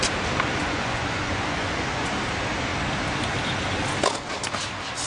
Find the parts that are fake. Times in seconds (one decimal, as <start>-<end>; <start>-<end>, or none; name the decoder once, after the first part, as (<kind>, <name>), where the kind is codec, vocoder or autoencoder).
0.6-2.1 (vocoder, Vocos)